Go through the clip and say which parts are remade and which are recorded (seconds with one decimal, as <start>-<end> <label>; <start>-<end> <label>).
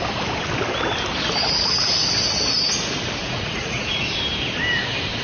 0.0-3.2 recorded; 3.2-4.0 remade; 4.0-5.2 recorded